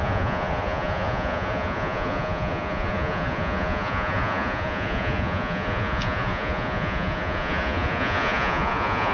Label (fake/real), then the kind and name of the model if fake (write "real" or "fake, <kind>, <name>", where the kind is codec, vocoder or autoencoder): fake, vocoder, Vocos